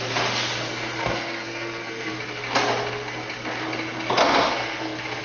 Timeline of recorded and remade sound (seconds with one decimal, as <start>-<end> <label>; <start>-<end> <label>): 0.0-1.0 recorded; 1.0-2.2 remade; 2.2-4.2 recorded; 4.2-5.2 remade